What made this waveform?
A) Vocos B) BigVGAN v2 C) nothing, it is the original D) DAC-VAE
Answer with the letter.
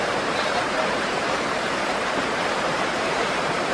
B